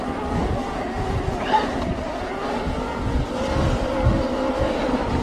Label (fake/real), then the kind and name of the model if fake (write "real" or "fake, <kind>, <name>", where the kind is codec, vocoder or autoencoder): real